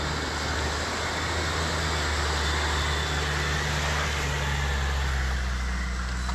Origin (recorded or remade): recorded